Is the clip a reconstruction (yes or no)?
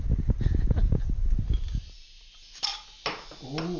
no